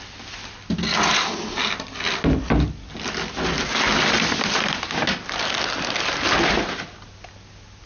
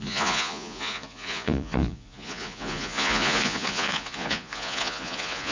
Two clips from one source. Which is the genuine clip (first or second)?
first